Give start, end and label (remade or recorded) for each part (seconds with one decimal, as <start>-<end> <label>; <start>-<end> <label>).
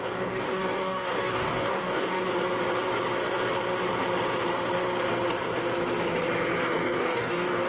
0.0-2.2 remade; 2.2-6.6 recorded; 6.6-7.7 remade